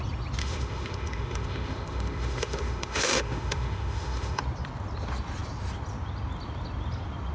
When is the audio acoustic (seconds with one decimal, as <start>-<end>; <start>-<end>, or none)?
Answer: 0.0-0.4; 4.4-7.3